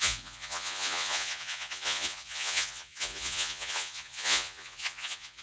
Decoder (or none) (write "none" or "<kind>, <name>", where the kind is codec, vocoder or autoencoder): vocoder, Vocos